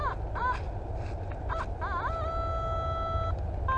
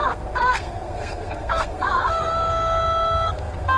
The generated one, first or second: second